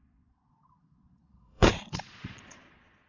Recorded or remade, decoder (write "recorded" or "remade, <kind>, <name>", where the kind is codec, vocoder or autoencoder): remade, vocoder, Vocos